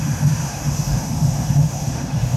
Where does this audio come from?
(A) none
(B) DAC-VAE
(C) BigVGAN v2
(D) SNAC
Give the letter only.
B